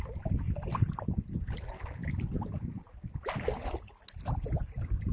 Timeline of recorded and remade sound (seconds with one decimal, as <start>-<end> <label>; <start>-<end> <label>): 0.0-5.1 recorded